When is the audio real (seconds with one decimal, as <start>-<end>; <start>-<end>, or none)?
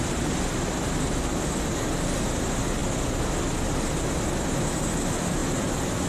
0.0-5.4